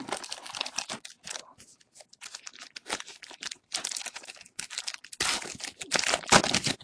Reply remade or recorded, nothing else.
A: recorded